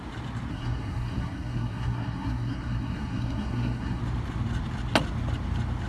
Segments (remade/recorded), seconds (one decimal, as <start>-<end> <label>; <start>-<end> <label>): 0.0-0.5 recorded; 0.5-4.0 remade; 4.0-5.9 recorded